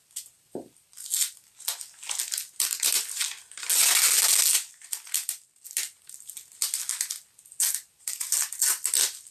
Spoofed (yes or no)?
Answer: no